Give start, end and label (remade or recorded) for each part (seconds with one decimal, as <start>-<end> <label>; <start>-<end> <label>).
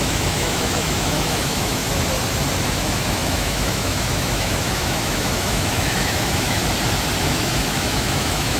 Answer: 0.0-1.8 remade; 1.8-2.6 recorded; 2.6-6.6 remade; 6.6-7.2 recorded; 7.2-8.6 remade